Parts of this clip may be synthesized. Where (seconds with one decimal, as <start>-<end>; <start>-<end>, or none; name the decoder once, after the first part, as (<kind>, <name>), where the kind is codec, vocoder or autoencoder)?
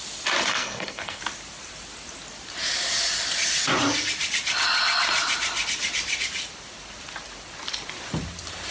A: 0.5-1.2 (codec, SNAC)